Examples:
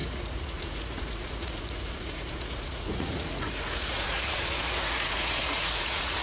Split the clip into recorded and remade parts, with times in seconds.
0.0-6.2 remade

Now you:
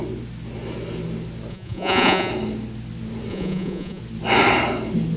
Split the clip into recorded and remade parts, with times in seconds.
0.0-1.5 recorded; 1.5-2.3 remade; 2.3-3.3 recorded; 3.3-4.0 remade; 4.0-5.2 recorded

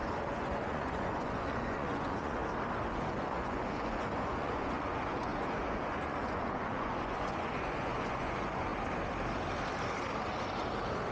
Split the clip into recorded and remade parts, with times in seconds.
0.0-2.4 remade; 2.4-2.9 recorded; 2.9-8.7 remade; 8.7-11.1 recorded

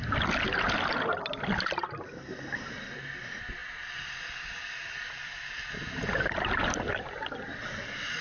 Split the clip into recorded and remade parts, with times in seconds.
0.0-8.2 recorded

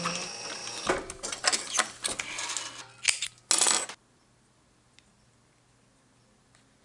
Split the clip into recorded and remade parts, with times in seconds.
0.0-6.8 recorded